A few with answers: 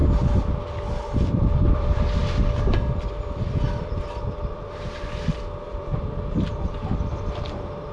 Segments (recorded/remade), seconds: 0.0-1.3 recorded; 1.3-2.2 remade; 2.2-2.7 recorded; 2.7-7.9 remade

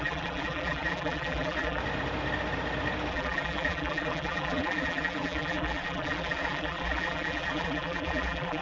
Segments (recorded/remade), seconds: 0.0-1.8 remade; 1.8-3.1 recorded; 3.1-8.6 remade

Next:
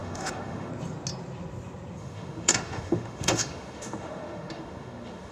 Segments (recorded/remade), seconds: 0.0-0.7 remade; 0.7-2.0 recorded; 2.0-5.3 remade

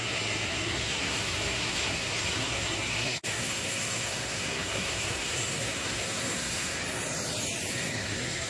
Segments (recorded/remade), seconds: 0.0-6.8 remade; 6.8-7.7 recorded; 7.7-8.5 remade

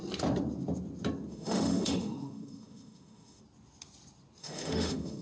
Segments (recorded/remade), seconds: 0.0-1.3 recorded; 1.3-3.4 remade; 3.4-4.4 recorded; 4.4-5.2 remade